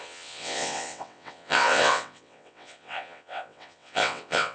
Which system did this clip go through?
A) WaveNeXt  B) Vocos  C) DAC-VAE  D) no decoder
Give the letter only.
A